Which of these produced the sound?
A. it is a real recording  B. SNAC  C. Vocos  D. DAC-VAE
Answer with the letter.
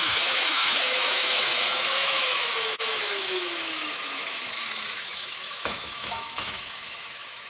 D